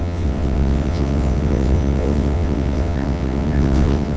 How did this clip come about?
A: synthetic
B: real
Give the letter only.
A